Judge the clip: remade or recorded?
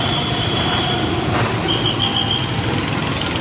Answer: recorded